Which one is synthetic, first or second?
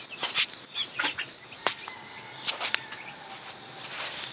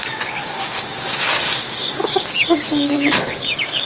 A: second